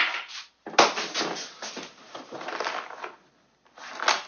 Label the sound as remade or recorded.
recorded